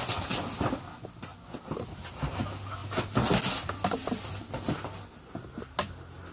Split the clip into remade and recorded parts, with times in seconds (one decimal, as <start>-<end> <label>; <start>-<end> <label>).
0.0-6.3 recorded